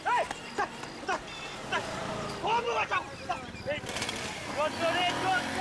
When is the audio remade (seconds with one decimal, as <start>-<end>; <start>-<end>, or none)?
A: none